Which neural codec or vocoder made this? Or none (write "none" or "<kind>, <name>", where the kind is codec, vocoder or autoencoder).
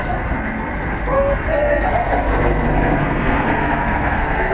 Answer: codec, SNAC